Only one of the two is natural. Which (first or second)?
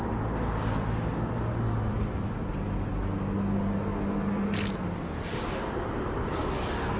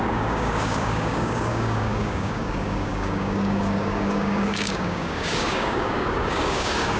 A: first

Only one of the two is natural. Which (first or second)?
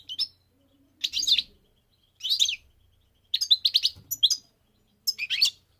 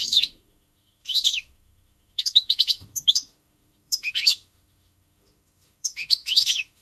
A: first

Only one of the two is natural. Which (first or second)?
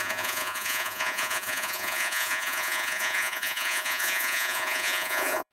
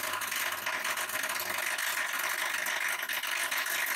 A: second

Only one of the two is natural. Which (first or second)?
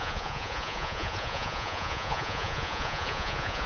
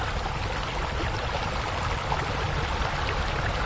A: second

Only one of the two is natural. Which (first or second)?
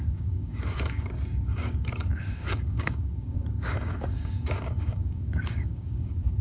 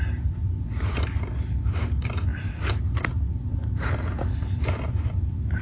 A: second